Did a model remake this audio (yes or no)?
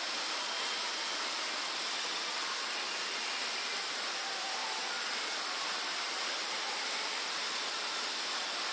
yes